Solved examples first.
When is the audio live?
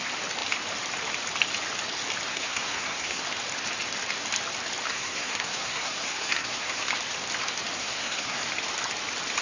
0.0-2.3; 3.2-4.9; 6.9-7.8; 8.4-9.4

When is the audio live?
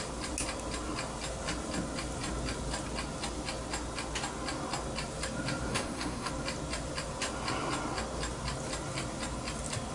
0.0-5.7; 6.3-9.9